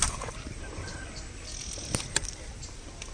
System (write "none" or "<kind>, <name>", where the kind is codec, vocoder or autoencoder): none